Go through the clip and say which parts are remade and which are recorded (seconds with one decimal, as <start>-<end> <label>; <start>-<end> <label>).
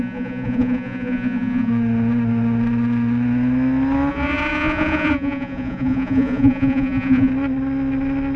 0.0-1.7 remade; 1.7-4.1 recorded; 4.1-7.3 remade; 7.3-8.4 recorded